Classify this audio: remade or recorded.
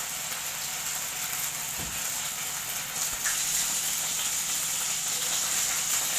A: recorded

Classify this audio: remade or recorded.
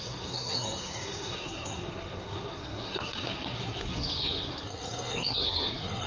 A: remade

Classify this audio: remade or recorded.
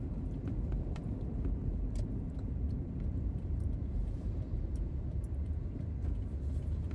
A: remade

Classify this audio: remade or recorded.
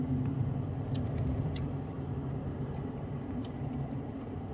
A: remade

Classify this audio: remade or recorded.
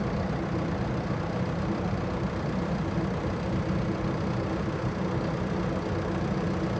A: recorded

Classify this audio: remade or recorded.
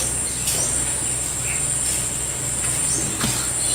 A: recorded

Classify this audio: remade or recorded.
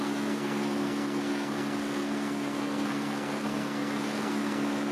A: remade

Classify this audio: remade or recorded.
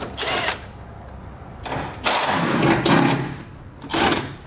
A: recorded